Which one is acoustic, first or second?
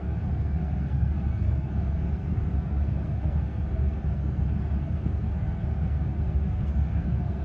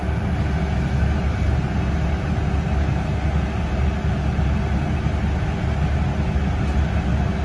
second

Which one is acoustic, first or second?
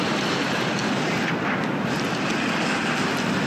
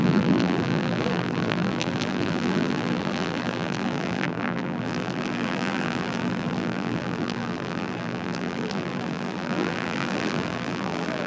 first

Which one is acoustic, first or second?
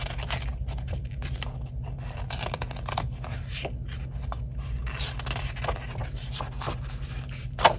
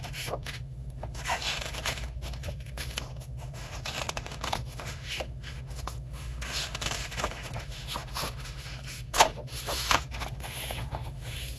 first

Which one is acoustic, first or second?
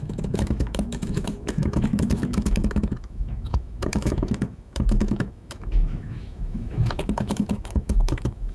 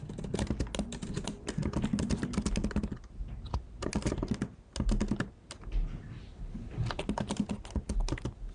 second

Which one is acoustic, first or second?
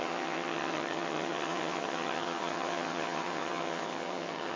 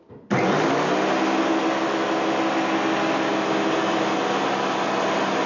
second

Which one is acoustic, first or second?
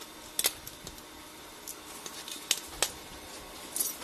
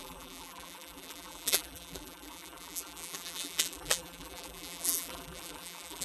first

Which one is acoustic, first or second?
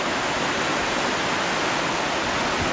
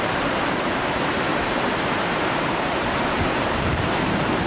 first